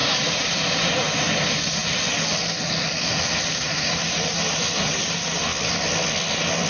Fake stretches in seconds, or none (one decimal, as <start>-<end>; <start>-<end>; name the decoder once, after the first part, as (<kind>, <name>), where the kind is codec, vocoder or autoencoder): 0.0-1.8 (vocoder, BigVGAN v2); 3.4-5.5